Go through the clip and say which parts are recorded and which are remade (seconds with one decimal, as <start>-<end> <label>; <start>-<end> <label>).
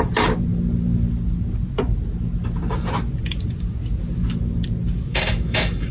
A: 0.0-5.1 recorded; 5.1-5.9 remade